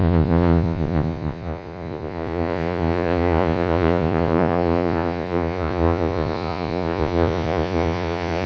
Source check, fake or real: fake